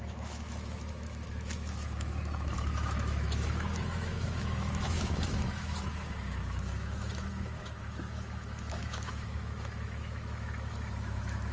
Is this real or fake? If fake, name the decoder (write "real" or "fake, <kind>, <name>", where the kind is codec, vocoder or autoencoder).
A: fake, autoencoder, DAC-VAE